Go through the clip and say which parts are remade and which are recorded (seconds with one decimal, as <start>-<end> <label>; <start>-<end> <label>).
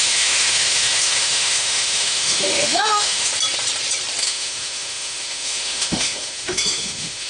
0.0-3.3 remade; 3.3-4.2 recorded; 4.2-7.3 remade